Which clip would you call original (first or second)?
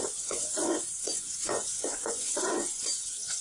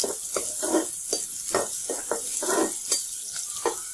second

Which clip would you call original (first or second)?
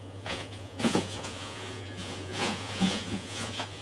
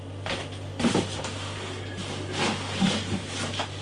second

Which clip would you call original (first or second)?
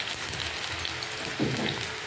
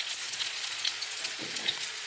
first